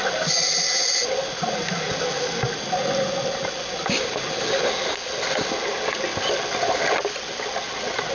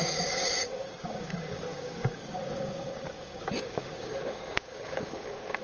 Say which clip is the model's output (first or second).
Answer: second